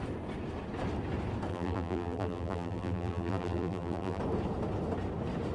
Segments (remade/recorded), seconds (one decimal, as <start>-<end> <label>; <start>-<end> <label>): 0.0-1.5 recorded; 1.5-4.2 remade; 4.2-5.5 recorded